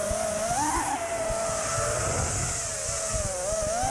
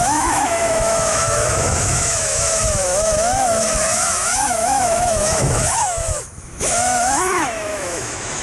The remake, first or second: second